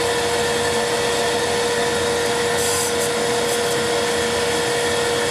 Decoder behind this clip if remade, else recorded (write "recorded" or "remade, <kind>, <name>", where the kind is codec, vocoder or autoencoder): recorded